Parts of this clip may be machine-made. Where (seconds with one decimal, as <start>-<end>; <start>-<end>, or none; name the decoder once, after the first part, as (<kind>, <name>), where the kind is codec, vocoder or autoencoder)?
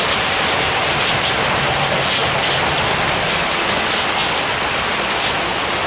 none